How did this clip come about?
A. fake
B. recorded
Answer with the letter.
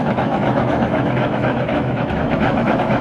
A